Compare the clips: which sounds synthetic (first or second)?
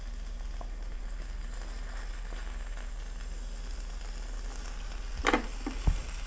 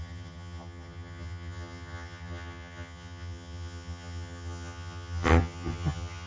second